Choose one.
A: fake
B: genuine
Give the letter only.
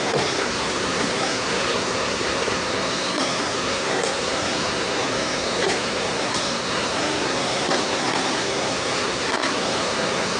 A